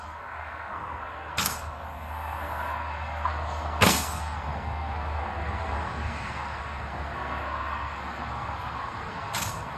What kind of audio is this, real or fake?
fake